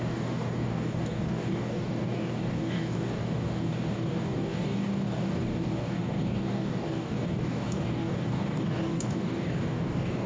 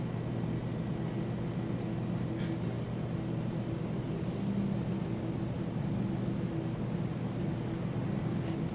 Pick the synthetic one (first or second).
first